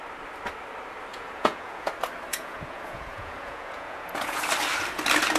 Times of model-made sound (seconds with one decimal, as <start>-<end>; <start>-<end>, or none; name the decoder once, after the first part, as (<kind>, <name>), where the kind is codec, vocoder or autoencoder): 1.1-1.9 (vocoder, Vocos); 2.3-4.4